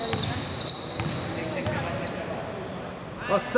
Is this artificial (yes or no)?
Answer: no